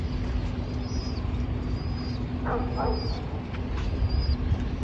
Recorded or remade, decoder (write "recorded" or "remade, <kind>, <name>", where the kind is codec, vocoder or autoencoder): recorded